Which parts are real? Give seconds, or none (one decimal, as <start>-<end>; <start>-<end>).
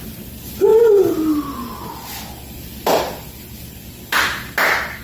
0.0-5.0